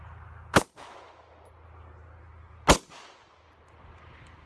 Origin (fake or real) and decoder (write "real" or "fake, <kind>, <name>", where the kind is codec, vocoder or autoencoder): real